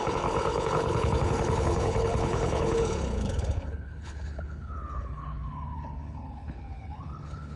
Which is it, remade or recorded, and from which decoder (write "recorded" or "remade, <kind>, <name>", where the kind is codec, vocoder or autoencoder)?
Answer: remade, codec, HILCodec